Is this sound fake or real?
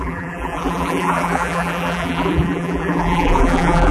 fake